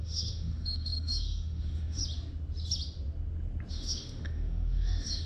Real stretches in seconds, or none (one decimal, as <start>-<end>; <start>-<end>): 2.0-3.7